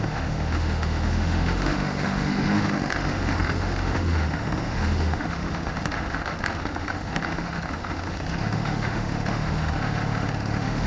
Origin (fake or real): fake